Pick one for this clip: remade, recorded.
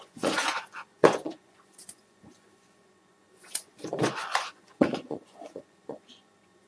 remade